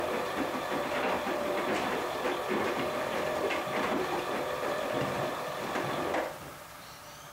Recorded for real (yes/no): no